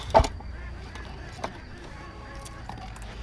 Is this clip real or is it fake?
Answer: real